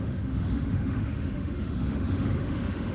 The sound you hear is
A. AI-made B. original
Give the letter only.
A